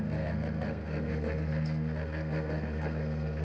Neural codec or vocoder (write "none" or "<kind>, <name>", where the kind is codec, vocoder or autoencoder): codec, SNAC